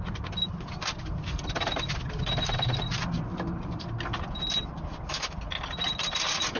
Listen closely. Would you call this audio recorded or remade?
recorded